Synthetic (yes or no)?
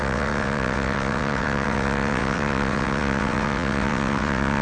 yes